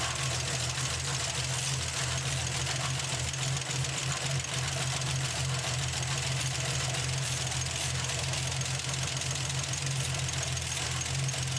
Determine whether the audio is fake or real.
real